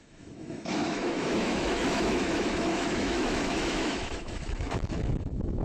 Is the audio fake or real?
fake